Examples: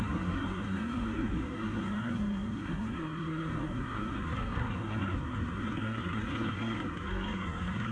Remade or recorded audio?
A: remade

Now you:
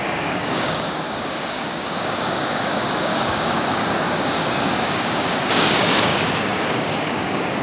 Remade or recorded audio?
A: remade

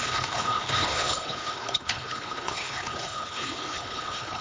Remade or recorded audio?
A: remade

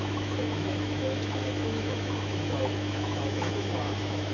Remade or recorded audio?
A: remade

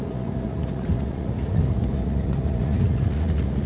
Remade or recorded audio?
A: remade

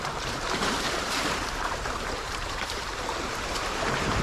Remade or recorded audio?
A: remade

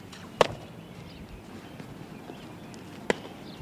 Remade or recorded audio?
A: recorded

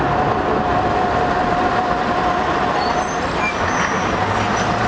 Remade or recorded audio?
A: recorded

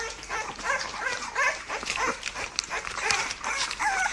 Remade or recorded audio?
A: remade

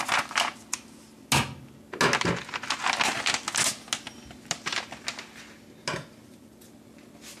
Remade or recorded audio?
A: recorded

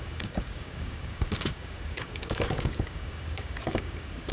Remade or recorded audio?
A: remade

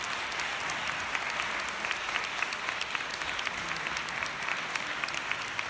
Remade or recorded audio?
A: recorded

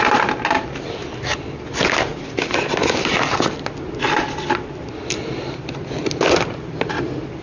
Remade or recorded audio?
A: recorded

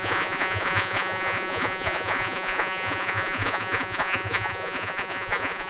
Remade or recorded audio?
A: remade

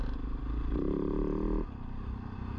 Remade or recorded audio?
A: recorded